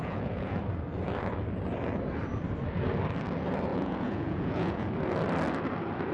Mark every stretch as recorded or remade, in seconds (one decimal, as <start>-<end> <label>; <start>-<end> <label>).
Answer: 0.0-0.6 remade; 0.6-3.7 recorded; 3.7-4.9 remade; 4.9-6.1 recorded